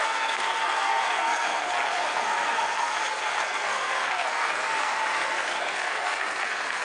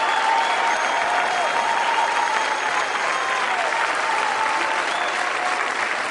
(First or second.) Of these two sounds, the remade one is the first